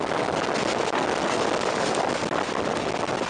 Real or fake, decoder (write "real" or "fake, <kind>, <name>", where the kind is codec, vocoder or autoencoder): real